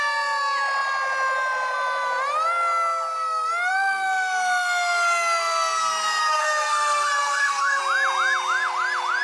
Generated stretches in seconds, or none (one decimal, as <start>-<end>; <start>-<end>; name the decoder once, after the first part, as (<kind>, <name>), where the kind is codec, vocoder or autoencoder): 6.2-7.8 (codec, SNAC)